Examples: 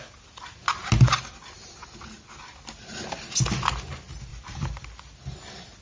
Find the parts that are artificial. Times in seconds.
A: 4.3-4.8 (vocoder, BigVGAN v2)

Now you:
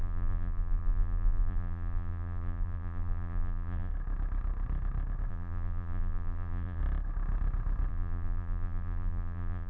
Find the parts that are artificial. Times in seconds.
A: 0.0-3.9 (vocoder, BigVGAN v2); 5.3-6.8; 7.9-9.7

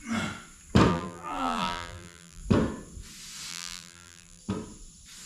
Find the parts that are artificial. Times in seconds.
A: 0.9-2.4 (vocoder, BigVGAN v2); 3.5-4.4

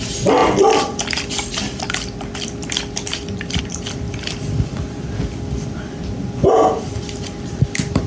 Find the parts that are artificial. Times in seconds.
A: none

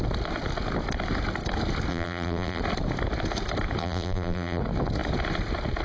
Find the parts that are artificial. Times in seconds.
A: 1.9-2.6 (vocoder, BigVGAN v2); 3.8-4.6

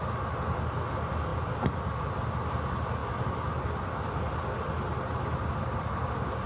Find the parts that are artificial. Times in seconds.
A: 1.3-2.1 (vocoder, BigVGAN v2); 4.9-5.5

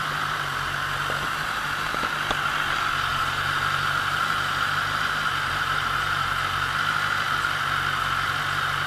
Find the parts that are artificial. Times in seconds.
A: 3.1-6.3 (vocoder, BigVGAN v2)

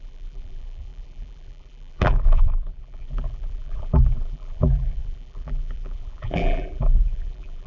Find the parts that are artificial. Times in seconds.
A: 0.0-7.7 (vocoder, BigVGAN v2)